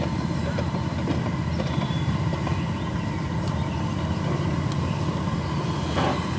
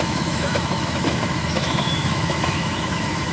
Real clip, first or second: first